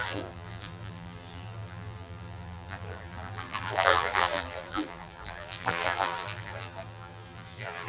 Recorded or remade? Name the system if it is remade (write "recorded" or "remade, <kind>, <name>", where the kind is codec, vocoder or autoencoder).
remade, vocoder, BigVGAN v2